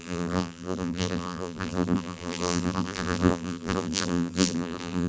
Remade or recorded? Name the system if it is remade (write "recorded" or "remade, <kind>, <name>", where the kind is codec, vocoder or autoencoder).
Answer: remade, vocoder, BigVGAN v2